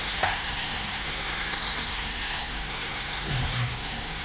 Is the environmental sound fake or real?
fake